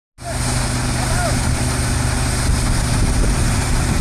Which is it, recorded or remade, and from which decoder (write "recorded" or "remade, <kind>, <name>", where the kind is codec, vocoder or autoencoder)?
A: recorded